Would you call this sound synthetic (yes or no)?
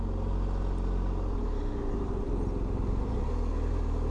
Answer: no